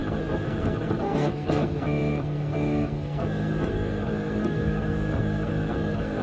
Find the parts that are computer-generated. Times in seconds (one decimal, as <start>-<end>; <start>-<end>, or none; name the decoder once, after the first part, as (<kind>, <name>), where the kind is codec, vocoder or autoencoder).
0.0-6.2 (codec, SNAC)